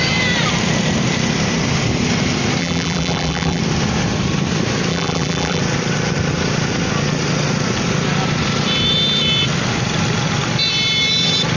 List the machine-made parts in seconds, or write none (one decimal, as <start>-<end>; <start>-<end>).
2.6-3.6; 4.9-5.6